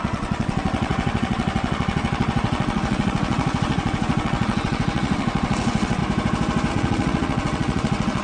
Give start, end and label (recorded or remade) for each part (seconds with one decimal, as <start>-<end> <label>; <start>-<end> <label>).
0.0-6.0 remade; 6.0-6.7 recorded; 6.7-8.2 remade